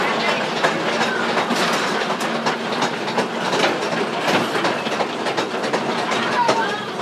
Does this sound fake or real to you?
real